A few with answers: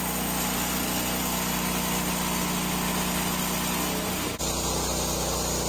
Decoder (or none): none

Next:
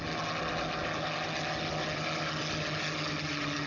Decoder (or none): none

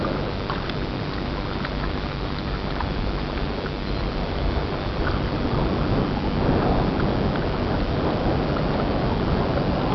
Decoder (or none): none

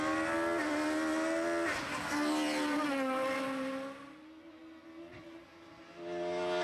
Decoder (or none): none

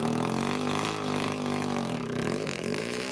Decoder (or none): autoencoder, DAC-VAE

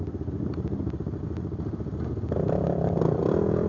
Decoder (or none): none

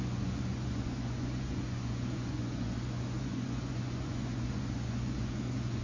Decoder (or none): vocoder, Vocos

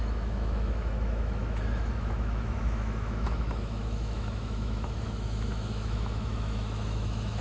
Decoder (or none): autoencoder, DAC-VAE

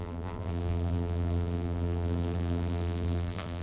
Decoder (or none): vocoder, BigVGAN v2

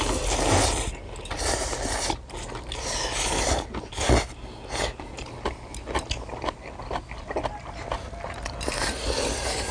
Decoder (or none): none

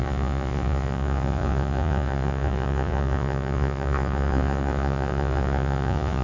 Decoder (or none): vocoder, Vocos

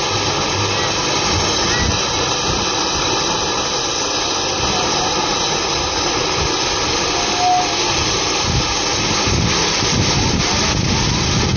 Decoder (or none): none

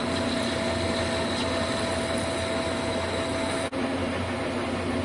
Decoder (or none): none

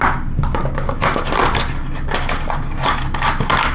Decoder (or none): none